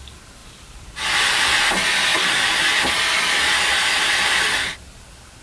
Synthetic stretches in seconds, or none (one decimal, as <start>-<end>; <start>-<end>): 0.4-1.6; 2.1-5.4